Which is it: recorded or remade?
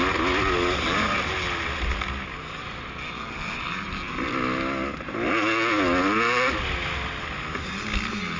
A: recorded